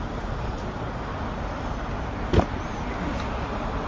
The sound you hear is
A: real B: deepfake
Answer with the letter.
A